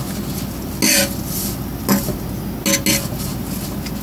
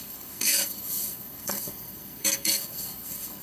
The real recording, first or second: first